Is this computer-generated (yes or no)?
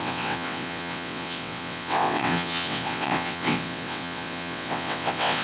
yes